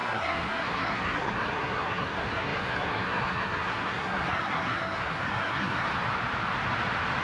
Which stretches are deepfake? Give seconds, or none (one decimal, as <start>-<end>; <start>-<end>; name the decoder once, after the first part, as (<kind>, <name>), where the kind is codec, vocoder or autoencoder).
0.0-5.9 (codec, SNAC)